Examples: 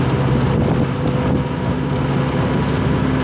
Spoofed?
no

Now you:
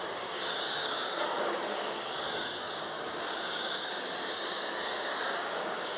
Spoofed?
yes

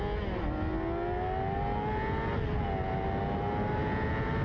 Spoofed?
no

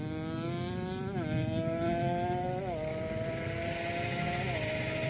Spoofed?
no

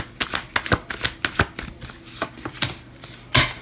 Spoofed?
no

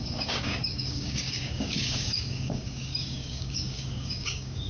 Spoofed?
yes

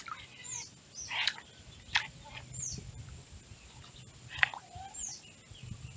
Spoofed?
no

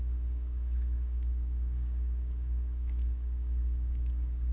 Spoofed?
yes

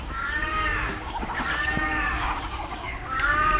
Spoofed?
yes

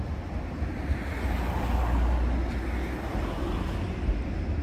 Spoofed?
no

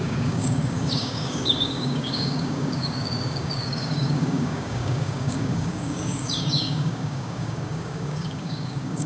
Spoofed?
yes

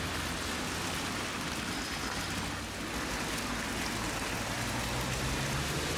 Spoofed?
no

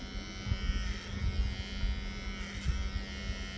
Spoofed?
no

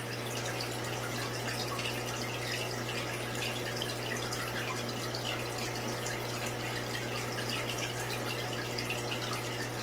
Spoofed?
no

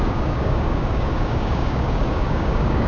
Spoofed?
yes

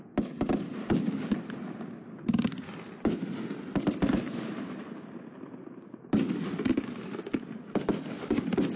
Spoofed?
no